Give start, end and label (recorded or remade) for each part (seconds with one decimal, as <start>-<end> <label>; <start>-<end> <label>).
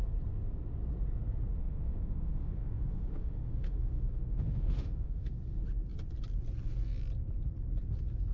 0.0-1.6 recorded; 1.6-5.3 remade; 5.3-8.3 recorded